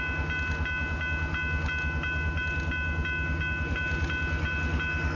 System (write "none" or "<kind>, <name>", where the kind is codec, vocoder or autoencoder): none